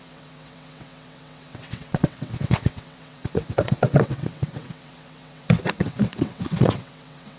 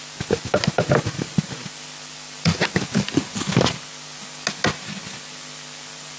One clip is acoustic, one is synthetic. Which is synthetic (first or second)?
first